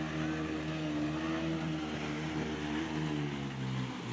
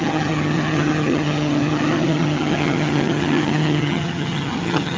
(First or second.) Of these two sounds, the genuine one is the first